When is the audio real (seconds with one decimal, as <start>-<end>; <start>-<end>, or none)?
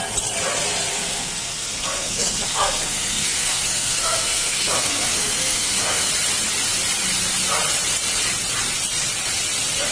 0.0-0.9; 6.1-9.9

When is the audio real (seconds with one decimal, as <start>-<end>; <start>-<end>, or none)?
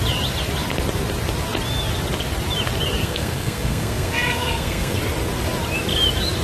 0.0-3.0; 5.0-6.4